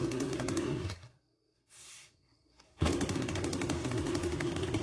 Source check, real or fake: fake